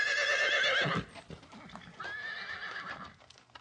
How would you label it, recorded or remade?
recorded